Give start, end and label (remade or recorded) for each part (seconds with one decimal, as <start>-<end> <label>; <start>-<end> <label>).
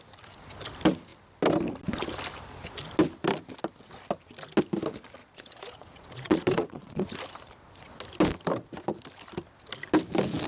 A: 0.0-5.2 recorded; 5.2-7.1 remade; 7.1-10.5 recorded